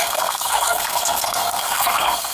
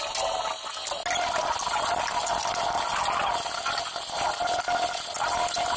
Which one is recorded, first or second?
second